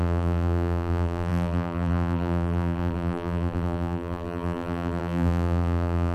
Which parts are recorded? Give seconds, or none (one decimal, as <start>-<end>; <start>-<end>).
none